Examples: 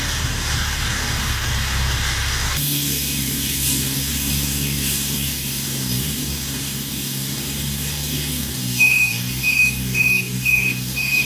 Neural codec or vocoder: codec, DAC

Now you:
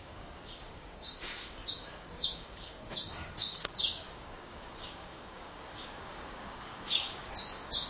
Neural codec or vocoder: codec, DAC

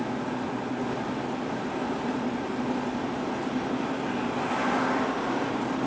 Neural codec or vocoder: none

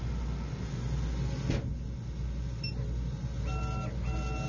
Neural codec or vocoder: none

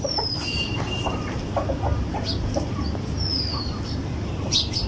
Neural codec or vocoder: none